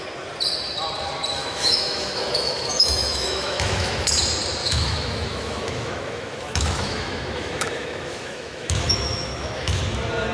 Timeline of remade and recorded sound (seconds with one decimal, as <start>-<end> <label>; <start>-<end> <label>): 0.0-1.4 recorded; 1.4-4.1 remade; 4.1-4.6 recorded; 4.6-9.8 remade; 9.8-10.3 recorded